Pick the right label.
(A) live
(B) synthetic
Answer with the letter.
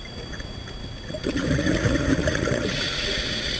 B